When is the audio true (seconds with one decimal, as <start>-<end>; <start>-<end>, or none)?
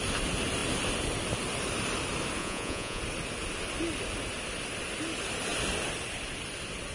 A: 0.0-2.4; 3.0-6.9